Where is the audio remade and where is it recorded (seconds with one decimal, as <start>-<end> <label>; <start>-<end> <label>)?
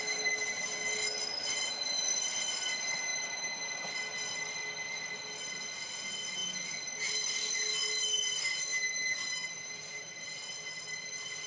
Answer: 0.0-3.1 recorded; 3.1-3.7 remade; 3.7-8.7 recorded; 8.7-10.5 remade; 10.5-11.5 recorded